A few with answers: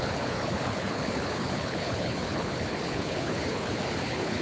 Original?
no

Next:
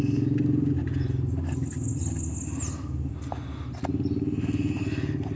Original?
yes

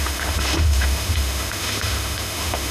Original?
no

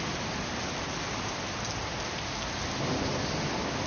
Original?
yes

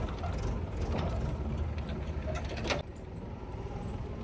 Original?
yes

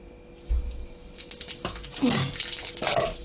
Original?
yes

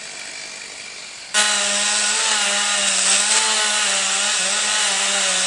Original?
yes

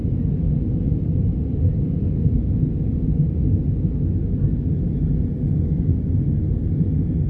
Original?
yes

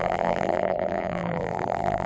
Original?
no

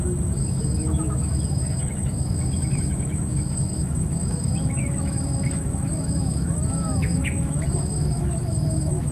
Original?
no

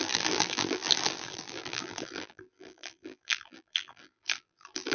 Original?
no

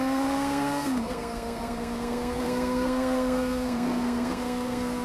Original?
no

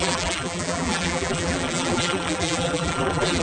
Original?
no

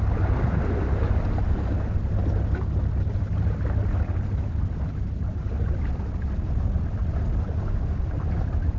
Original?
yes